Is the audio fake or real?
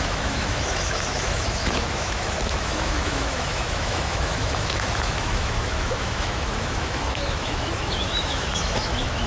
fake